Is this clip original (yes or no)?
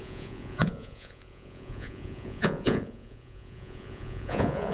no